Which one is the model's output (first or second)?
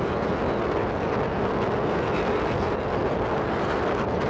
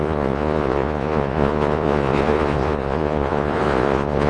second